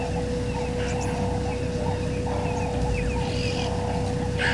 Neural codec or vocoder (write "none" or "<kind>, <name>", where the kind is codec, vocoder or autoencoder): none